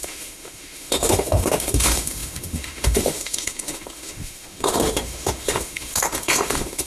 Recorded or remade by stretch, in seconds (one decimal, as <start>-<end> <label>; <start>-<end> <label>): 0.0-6.9 remade